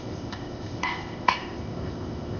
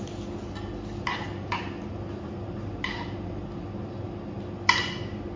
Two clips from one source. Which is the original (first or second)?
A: second